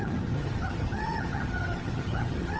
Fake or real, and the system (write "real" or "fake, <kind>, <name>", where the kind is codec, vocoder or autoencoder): fake, vocoder, HiFi-GAN